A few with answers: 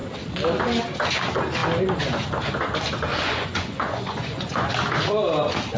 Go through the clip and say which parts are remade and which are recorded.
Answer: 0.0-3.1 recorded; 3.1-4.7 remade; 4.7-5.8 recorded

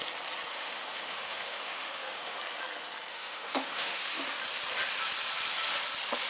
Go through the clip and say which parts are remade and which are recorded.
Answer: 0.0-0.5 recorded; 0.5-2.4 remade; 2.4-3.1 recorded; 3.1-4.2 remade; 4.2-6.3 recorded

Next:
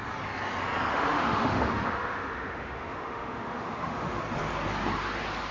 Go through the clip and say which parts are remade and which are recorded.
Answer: 0.0-0.9 recorded; 0.9-4.2 remade; 4.2-5.5 recorded